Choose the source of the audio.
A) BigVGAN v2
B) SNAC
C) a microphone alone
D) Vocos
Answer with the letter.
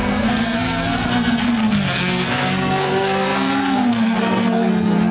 B